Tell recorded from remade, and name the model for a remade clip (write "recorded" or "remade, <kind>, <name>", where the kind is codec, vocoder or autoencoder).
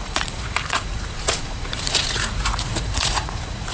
remade, vocoder, Vocos